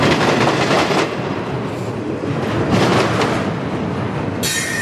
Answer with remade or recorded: recorded